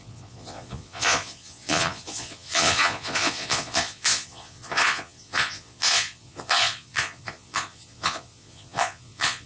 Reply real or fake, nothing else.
fake